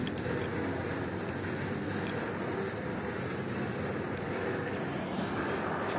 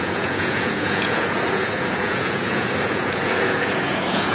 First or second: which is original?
first